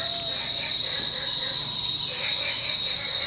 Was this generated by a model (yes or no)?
no